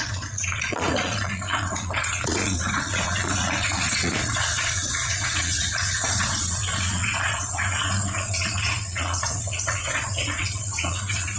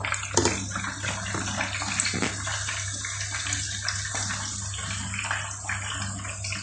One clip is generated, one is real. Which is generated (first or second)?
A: first